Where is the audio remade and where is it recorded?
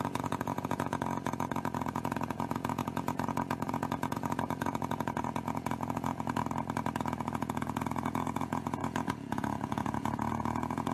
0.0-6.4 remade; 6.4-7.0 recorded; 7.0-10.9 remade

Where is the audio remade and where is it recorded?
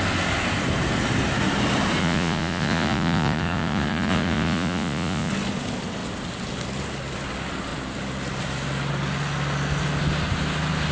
0.0-2.0 recorded; 2.0-5.3 remade; 5.3-10.9 recorded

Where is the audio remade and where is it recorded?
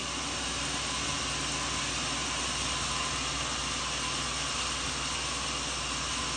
0.0-6.4 recorded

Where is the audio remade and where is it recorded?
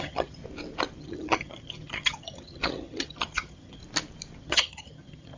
0.0-0.4 remade; 0.4-1.0 recorded; 1.0-3.8 remade; 3.8-4.4 recorded; 4.4-5.4 remade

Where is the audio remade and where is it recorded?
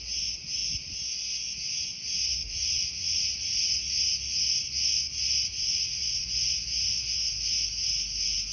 0.0-2.4 recorded; 2.4-3.8 remade; 3.8-5.4 recorded; 5.4-6.2 remade; 6.2-8.5 recorded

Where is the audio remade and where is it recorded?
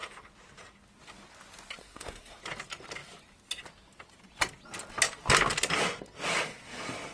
0.0-1.8 recorded; 1.8-2.4 remade; 2.4-7.1 recorded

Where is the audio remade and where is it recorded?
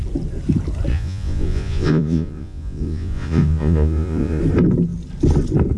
0.0-0.9 recorded; 0.9-4.4 remade; 4.4-5.8 recorded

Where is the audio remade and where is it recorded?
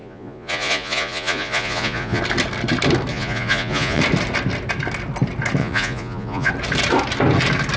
0.0-2.2 remade; 2.2-3.1 recorded; 3.1-4.0 remade; 4.0-5.6 recorded; 5.6-6.5 remade; 6.5-7.8 recorded